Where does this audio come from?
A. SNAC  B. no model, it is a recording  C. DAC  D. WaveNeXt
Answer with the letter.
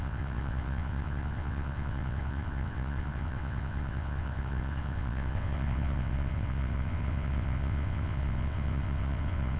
D